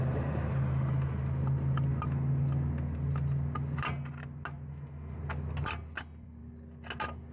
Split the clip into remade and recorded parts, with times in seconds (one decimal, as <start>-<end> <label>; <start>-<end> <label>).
0.0-4.7 recorded; 4.7-5.2 remade; 5.2-7.3 recorded